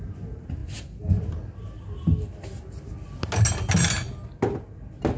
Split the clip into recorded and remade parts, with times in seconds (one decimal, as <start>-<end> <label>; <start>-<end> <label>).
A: 0.0-5.2 recorded